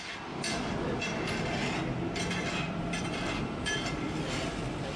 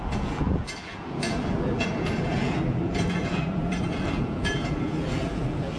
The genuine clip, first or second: first